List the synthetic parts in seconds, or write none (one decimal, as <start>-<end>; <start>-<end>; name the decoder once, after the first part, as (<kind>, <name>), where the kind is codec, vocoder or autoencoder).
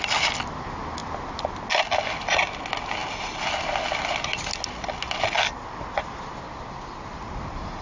none